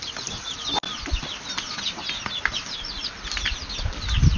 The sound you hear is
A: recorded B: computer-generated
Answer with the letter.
A